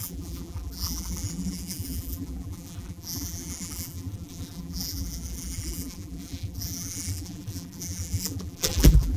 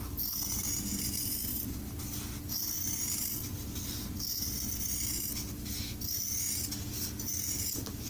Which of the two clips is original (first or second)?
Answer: second